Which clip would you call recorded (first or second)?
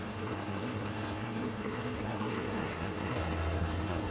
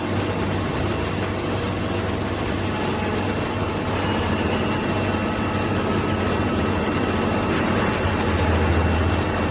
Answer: second